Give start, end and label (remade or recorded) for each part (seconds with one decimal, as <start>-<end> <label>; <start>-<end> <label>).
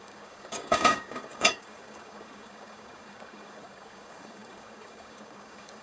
0.0-5.8 remade